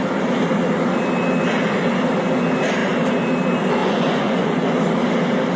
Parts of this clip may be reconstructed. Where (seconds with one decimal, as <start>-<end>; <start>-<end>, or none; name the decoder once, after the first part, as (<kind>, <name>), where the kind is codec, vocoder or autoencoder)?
3.8-4.7 (vocoder, Vocos)